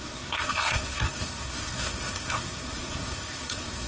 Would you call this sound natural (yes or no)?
no